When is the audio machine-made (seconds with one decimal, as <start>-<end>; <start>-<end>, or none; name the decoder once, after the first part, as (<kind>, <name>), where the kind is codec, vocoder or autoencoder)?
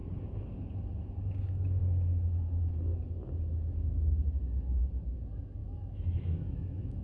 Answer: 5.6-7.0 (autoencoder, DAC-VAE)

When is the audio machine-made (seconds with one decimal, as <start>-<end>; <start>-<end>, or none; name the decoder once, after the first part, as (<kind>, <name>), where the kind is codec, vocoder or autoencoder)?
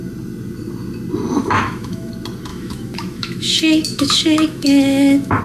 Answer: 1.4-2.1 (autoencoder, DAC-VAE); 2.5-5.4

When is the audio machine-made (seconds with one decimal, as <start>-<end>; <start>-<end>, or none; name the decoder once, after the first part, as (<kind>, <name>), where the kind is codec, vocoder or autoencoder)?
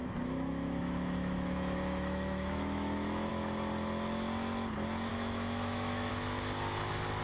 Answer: 0.0-3.3 (autoencoder, DAC-VAE); 5.1-6.1